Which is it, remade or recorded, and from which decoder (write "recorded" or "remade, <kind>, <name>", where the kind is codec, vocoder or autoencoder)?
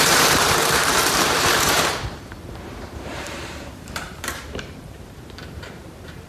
remade, vocoder, BigVGAN v2